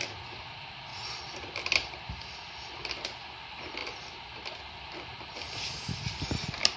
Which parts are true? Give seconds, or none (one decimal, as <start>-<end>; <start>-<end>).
0.0-6.8